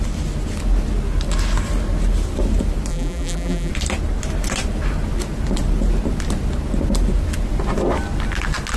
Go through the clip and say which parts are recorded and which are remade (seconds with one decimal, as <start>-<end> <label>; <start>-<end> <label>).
0.0-2.9 recorded; 2.9-3.7 remade; 3.7-8.8 recorded